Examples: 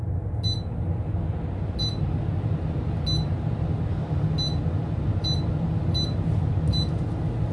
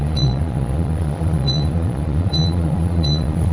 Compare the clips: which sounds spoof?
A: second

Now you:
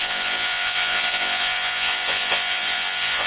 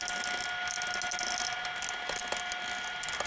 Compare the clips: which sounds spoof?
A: first